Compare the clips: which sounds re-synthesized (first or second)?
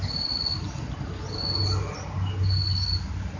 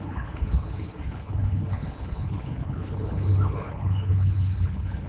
second